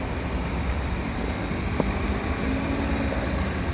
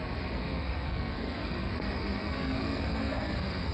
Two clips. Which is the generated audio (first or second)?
second